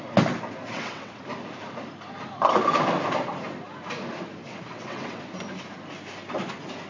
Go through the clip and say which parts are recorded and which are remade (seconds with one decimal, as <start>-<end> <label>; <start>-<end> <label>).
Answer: 0.0-0.7 recorded; 0.7-1.2 remade; 1.2-4.5 recorded; 4.5-5.2 remade; 5.2-6.9 recorded